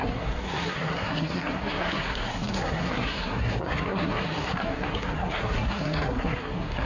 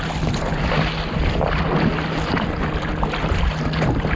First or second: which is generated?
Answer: first